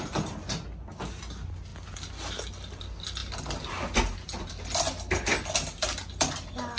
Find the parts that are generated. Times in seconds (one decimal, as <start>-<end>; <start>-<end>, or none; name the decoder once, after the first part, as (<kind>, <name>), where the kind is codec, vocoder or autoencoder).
none